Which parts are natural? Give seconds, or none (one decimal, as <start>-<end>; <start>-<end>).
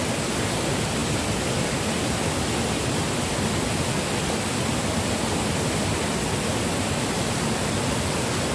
0.0-8.5